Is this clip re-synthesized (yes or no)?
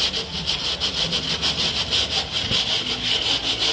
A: no